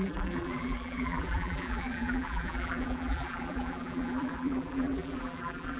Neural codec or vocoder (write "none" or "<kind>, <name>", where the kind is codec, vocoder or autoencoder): vocoder, BigVGAN v2